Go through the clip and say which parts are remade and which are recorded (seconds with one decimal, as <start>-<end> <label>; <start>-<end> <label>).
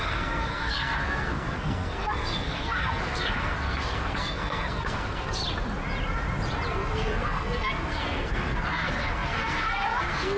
0.0-5.4 remade; 5.4-6.7 recorded; 6.7-10.4 remade